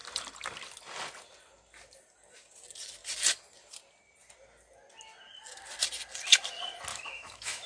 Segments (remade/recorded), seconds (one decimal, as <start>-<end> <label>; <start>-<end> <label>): 0.0-6.9 recorded; 6.9-7.7 remade